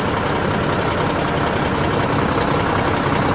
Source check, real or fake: real